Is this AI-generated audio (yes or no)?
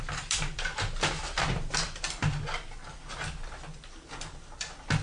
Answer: yes